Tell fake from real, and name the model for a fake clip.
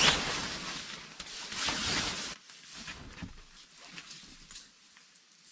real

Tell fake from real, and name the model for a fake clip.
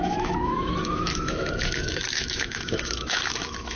fake, autoencoder, DAC-VAE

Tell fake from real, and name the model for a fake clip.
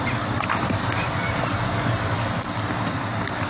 fake, vocoder, BigVGAN v2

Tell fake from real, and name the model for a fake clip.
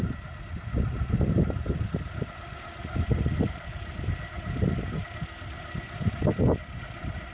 real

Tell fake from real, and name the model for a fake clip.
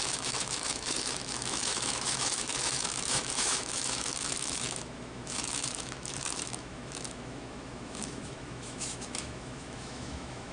fake, autoencoder, DAC-VAE